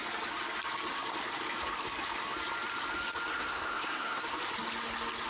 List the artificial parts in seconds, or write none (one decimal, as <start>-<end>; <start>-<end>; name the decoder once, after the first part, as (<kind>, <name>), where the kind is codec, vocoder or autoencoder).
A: 3.3-4.2 (codec, SNAC)